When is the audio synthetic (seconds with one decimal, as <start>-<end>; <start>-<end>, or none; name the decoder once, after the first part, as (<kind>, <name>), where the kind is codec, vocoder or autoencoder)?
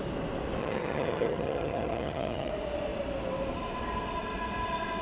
0.6-2.5 (vocoder, HiFi-GAN)